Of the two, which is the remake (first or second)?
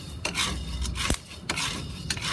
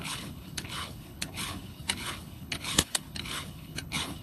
second